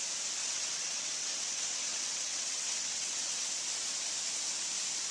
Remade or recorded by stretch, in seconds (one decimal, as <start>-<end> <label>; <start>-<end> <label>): 0.0-0.4 recorded; 0.4-3.5 remade; 3.5-5.1 recorded